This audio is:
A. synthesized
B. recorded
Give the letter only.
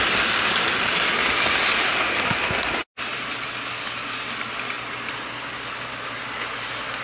B